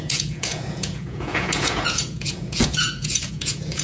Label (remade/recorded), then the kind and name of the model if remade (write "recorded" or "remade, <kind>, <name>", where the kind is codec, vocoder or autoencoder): remade, vocoder, Vocos